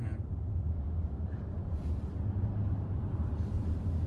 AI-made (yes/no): yes